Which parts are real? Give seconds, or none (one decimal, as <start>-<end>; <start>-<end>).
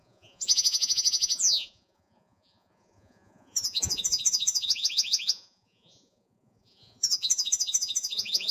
none